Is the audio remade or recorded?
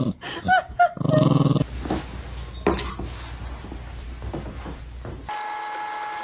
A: recorded